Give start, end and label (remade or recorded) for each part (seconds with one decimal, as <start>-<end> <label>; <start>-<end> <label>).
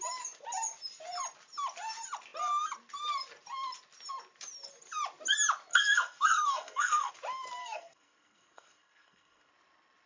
0.0-5.7 recorded; 5.7-7.1 remade; 7.1-7.6 recorded; 7.6-9.5 remade; 9.5-10.1 recorded